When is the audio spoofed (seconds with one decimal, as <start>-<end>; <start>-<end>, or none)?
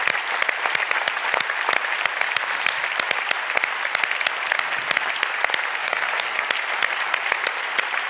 5.8-6.4